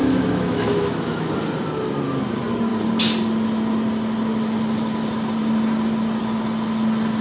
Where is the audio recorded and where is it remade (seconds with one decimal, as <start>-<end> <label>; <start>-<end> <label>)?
0.0-1.3 remade; 1.3-7.2 recorded